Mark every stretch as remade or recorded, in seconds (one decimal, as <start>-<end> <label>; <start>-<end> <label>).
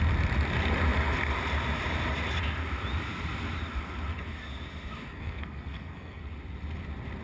0.0-5.1 recorded; 5.1-6.2 remade; 6.2-7.2 recorded